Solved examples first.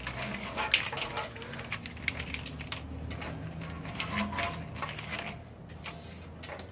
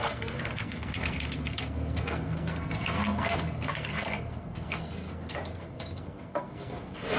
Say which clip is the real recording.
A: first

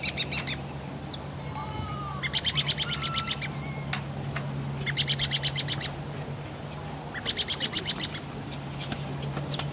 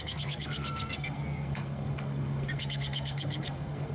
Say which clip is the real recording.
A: first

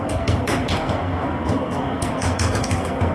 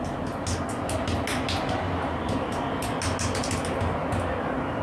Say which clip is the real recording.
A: second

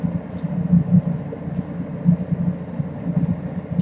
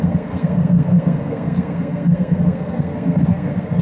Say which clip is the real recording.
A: first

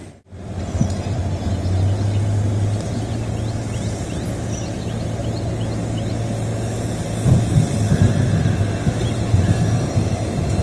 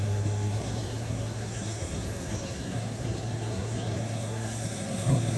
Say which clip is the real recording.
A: first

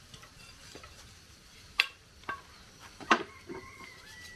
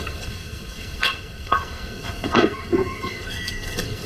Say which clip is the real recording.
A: first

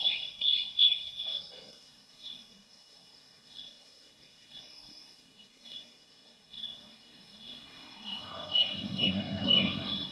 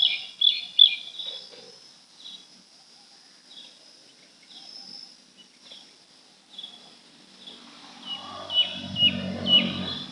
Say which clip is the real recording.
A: second